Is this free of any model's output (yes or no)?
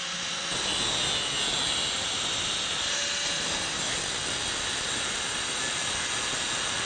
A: yes